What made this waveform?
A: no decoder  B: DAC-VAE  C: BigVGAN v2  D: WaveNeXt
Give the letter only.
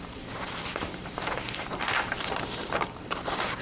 C